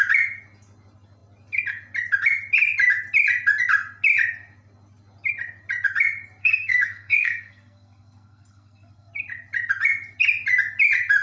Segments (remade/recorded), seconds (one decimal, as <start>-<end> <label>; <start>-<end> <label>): 0.0-6.4 recorded; 6.4-9.1 remade; 9.1-11.2 recorded